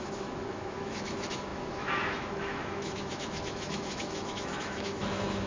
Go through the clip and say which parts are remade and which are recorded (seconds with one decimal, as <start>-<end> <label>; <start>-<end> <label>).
0.0-5.5 remade

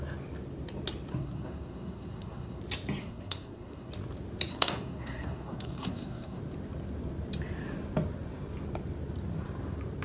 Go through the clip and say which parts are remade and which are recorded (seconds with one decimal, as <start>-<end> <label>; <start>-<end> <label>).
0.0-1.1 recorded; 1.1-2.6 remade; 2.6-3.0 recorded; 3.0-3.9 remade; 3.9-4.5 recorded; 4.5-6.4 remade; 6.4-10.0 recorded

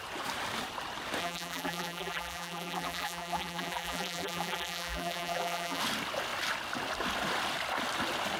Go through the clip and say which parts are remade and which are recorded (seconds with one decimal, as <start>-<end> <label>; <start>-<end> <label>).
0.0-1.2 recorded; 1.2-5.8 remade; 5.8-8.4 recorded

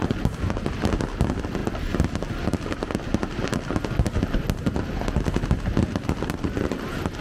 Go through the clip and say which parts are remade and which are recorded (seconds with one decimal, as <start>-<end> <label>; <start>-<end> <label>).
0.0-7.2 recorded